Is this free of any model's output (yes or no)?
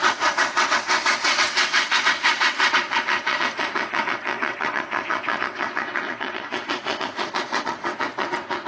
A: no